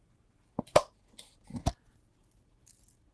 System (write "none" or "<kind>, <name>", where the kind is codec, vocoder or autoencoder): none